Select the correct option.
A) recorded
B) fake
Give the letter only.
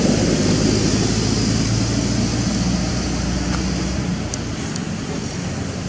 A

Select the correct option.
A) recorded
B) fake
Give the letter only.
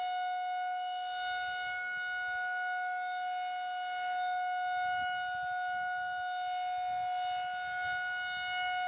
A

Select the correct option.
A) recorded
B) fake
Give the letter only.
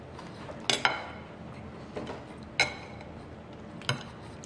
A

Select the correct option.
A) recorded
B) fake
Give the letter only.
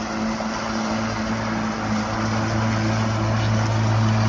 A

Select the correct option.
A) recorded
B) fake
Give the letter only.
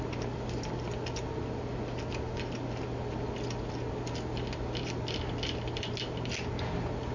A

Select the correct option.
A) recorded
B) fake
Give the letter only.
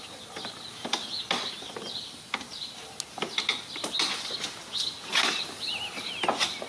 A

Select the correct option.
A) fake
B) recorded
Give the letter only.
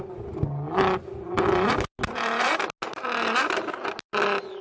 B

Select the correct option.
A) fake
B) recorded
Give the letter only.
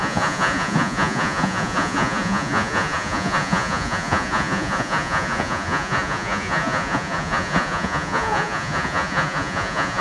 A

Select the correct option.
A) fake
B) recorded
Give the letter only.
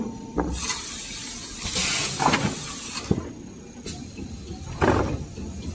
B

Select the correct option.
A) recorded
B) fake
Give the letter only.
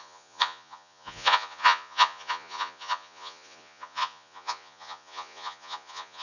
B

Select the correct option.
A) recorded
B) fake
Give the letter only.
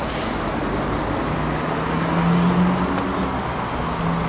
A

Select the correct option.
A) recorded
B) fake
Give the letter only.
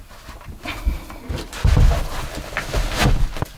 A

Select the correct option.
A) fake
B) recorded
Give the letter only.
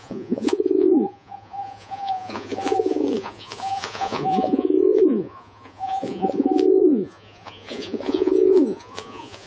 A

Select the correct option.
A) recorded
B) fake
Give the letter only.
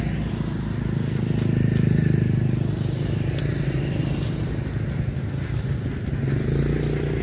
A